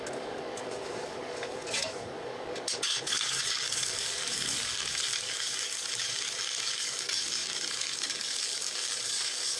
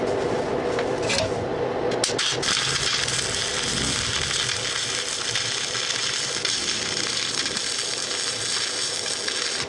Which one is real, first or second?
second